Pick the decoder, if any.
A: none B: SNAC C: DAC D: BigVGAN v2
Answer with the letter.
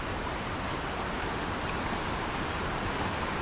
D